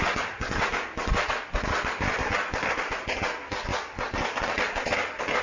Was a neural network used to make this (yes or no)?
no